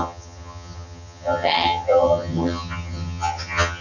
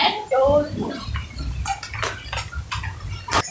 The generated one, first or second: first